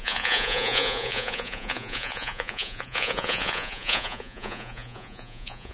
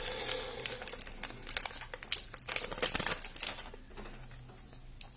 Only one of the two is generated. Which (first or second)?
first